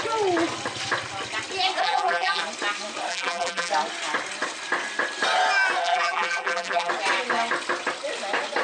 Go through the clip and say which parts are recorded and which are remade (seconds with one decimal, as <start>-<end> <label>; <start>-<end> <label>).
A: 0.0-1.8 recorded; 1.8-2.4 remade; 2.4-3.1 recorded; 3.1-3.7 remade; 3.7-5.8 recorded; 5.8-6.9 remade; 6.9-8.6 recorded